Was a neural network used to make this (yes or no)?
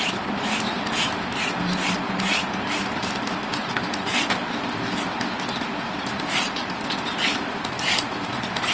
no